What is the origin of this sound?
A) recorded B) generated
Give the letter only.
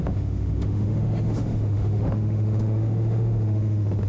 B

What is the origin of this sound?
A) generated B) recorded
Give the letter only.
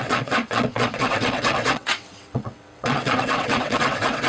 A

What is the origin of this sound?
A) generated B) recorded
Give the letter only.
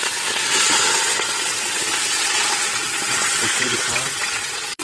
A